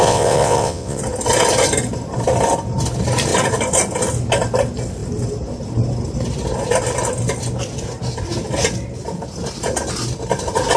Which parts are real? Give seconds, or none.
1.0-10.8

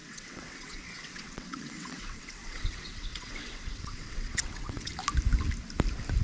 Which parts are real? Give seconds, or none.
4.9-6.2

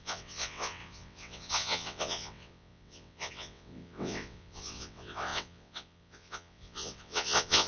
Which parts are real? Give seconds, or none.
none

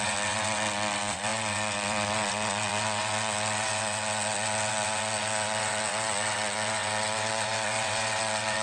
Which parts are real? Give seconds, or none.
none